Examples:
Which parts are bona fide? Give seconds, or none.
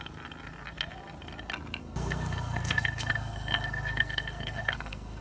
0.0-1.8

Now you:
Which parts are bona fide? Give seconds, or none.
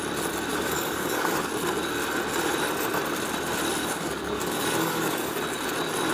0.0-0.5; 1.5-3.8; 5.4-6.1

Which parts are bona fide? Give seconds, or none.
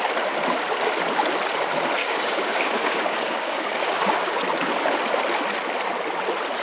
0.0-2.0; 4.4-6.6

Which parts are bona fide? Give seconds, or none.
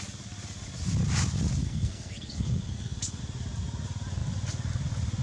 0.0-1.6; 3.2-5.2